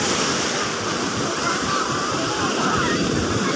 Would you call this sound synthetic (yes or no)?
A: yes